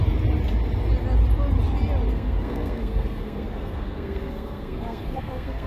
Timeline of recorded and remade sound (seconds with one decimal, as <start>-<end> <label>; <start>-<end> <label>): 0.0-2.1 recorded; 2.1-5.7 remade